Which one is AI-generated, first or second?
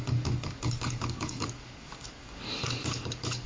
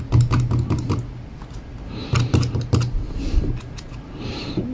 first